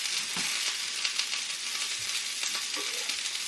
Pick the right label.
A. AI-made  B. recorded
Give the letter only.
B